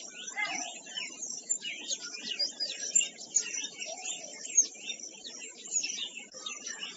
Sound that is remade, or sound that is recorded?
remade